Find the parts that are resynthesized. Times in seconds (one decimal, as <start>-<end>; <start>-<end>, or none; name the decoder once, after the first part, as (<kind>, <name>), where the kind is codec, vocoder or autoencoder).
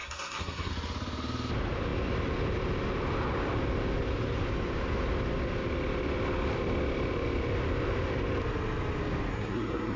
0.0-0.7 (codec, SNAC); 9.3-10.0